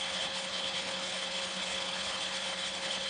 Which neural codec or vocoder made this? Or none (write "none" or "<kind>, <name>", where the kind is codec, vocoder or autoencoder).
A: codec, HILCodec